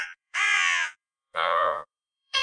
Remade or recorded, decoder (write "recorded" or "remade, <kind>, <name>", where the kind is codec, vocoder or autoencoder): remade, vocoder, Vocos